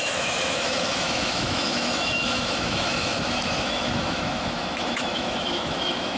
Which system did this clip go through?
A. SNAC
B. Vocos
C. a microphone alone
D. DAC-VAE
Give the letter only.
D